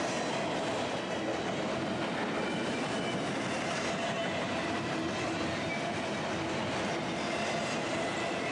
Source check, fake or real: real